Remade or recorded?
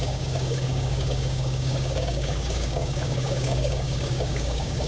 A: remade